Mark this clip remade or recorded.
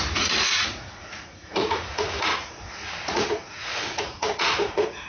remade